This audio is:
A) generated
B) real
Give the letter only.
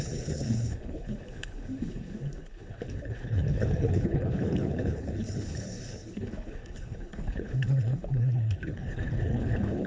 A